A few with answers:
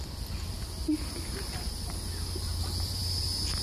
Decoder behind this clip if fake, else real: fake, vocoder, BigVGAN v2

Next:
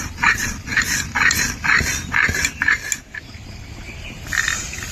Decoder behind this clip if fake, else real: real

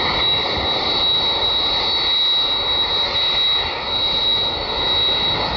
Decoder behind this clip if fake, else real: real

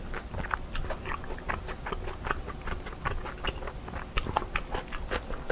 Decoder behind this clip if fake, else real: real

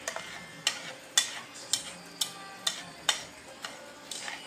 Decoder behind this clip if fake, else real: real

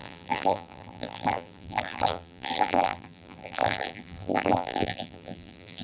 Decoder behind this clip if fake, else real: fake, vocoder, BigVGAN v2